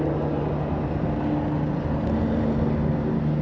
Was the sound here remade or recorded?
recorded